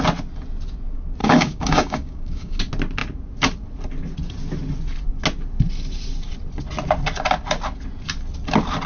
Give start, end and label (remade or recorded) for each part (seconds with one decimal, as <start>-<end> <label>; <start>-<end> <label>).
0.0-1.2 recorded; 1.2-2.6 remade; 2.6-8.9 recorded